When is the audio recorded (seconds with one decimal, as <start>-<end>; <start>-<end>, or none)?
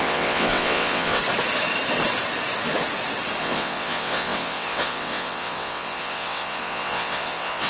1.2-3.4